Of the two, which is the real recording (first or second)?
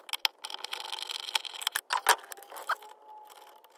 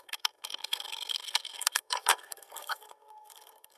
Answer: first